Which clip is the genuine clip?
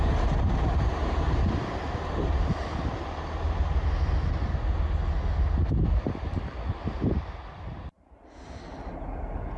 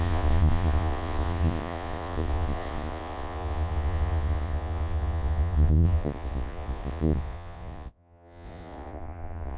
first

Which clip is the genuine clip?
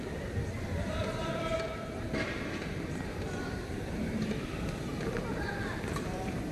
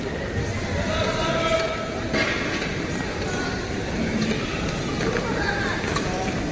second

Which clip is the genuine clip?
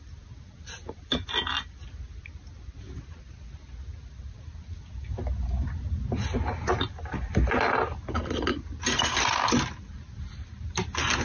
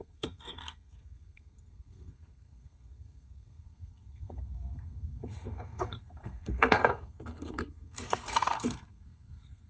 first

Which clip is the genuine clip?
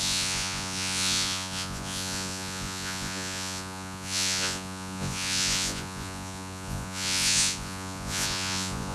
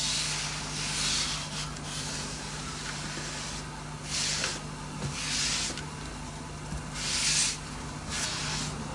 second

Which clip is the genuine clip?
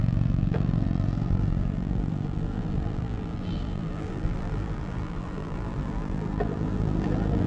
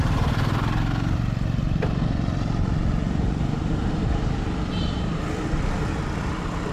second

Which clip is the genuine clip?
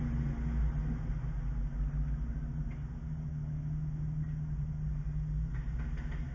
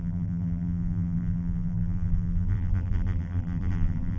first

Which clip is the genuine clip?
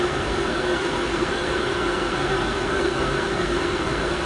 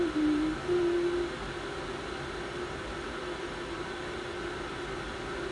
second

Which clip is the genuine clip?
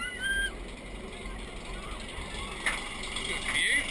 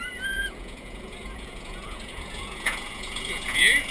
first